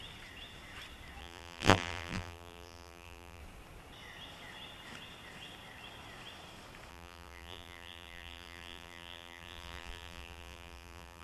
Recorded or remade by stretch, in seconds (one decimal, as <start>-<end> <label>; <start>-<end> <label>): 0.0-1.2 recorded; 1.2-3.4 remade; 3.4-6.9 recorded; 6.9-11.2 remade